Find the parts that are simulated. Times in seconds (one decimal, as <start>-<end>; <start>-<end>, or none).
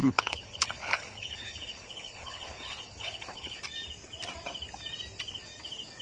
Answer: 0.0-3.6